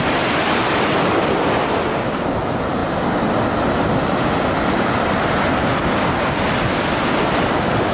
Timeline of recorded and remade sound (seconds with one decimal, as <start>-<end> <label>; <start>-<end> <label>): 0.0-7.9 recorded